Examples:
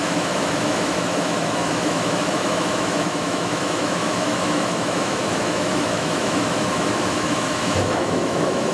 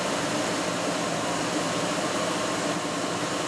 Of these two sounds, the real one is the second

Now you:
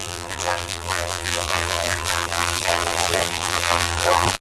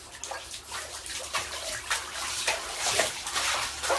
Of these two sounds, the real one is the second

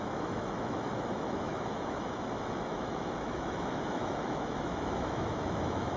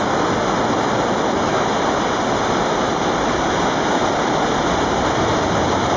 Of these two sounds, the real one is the second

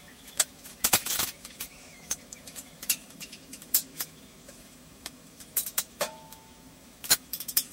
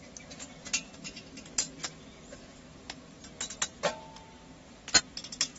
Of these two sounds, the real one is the second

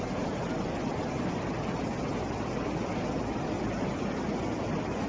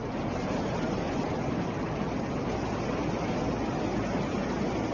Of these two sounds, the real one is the second